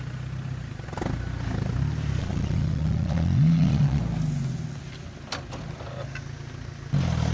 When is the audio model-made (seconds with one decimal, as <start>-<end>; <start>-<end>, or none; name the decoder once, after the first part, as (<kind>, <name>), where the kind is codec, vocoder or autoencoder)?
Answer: 2.2-4.0 (vocoder, Vocos)